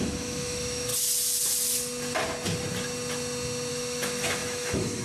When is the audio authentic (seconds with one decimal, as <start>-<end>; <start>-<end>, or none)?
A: 0.9-3.7